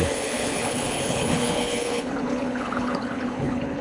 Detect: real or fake fake